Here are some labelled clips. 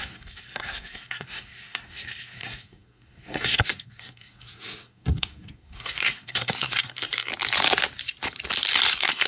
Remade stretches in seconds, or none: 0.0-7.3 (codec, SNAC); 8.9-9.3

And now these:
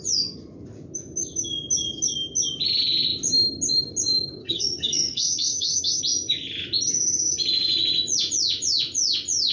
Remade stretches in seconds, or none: 4.4-6.0 (codec, SNAC)

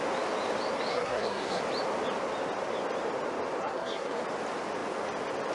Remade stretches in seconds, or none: 0.9-1.6 (codec, SNAC); 3.6-4.2

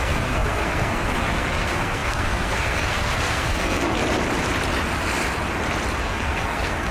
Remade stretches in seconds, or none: 0.0-4.0 (codec, SNAC); 6.0-6.9

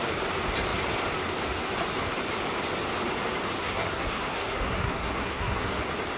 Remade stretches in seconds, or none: 3.6-5.8 (codec, SNAC)

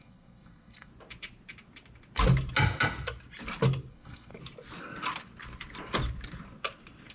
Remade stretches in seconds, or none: 0.0-0.9 (codec, SNAC); 3.9-4.3